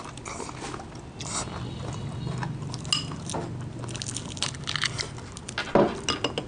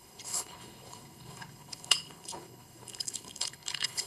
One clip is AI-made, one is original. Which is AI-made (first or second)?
second